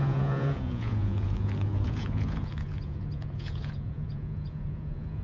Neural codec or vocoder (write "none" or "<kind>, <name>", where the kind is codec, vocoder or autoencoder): vocoder, Vocos